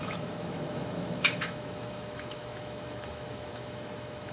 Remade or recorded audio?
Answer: remade